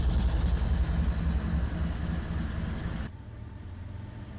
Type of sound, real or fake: real